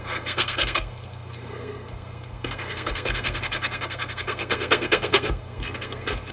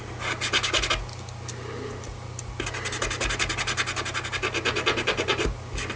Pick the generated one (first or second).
first